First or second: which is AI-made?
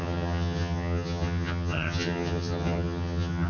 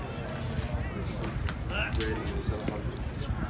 first